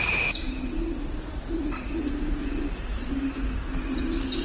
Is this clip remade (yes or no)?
yes